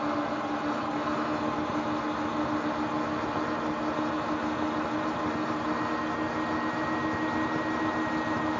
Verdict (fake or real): real